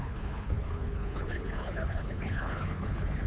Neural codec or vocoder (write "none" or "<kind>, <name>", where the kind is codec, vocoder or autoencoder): codec, HILCodec